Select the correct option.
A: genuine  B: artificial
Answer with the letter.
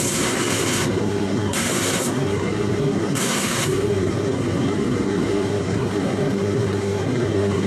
B